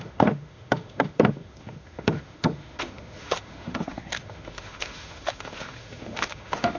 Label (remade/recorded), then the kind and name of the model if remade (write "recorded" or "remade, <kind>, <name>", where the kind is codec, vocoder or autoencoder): remade, autoencoder, DAC-VAE